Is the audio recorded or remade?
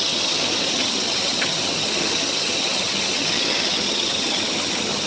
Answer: remade